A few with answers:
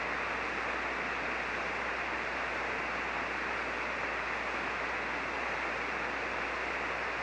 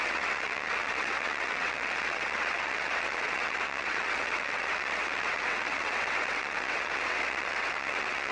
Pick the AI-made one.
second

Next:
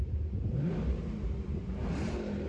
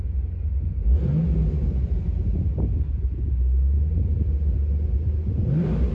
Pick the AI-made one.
first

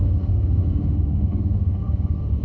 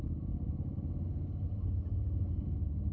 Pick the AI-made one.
first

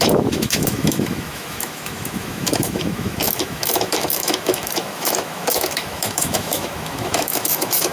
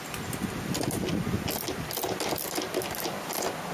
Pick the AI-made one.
first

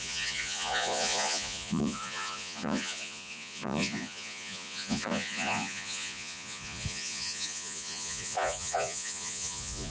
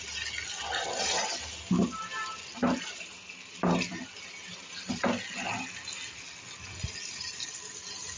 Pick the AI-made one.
first